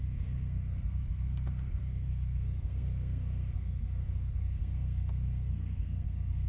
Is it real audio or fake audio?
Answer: fake